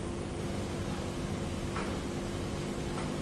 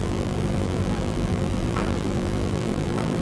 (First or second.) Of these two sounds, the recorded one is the first